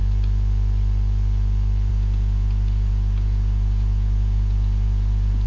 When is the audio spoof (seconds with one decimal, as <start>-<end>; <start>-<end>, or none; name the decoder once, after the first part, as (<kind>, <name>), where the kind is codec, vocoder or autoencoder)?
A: 1.9-5.5 (vocoder, Vocos)

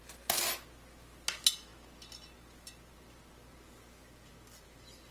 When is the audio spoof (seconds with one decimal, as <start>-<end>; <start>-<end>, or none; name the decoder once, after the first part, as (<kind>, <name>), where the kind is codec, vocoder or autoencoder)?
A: none

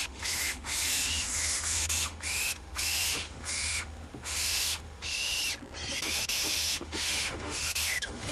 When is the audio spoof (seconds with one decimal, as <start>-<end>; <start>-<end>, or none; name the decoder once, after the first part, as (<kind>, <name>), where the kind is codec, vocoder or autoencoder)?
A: 0.0-5.4 (autoencoder, DAC-VAE); 6.0-8.3

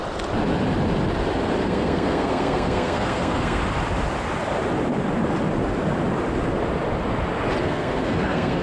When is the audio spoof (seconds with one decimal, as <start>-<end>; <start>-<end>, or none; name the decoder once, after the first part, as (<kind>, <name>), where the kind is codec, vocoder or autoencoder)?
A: 1.6-3.6 (codec, SNAC); 7.6-8.6

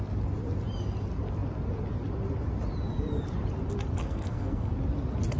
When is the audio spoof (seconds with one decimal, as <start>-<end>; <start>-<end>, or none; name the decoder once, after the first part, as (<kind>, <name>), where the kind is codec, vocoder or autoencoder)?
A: 4.0-4.7 (codec, SNAC)

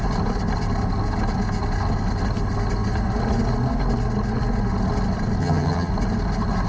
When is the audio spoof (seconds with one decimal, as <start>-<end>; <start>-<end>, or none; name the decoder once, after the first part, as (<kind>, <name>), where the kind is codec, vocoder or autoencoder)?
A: 5.4-5.9 (vocoder, HiFi-GAN)

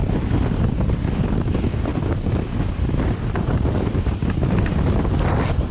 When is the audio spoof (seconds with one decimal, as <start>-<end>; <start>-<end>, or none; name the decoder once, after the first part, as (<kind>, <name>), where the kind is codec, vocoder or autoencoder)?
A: none

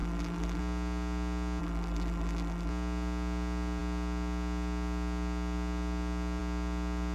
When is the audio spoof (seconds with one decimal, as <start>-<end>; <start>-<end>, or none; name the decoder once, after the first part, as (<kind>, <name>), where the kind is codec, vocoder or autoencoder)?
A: 0.0-0.6 (vocoder, BigVGAN v2); 1.6-2.7